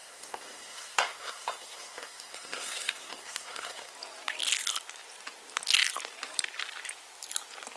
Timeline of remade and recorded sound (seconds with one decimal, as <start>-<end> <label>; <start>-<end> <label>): 0.0-3.9 remade; 3.9-7.8 recorded